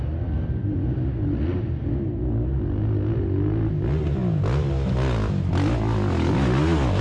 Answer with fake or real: real